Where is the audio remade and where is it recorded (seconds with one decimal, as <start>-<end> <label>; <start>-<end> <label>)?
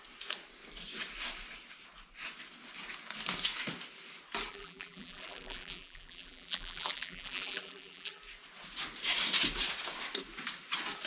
0.0-4.5 recorded; 4.5-8.2 remade; 8.2-11.1 recorded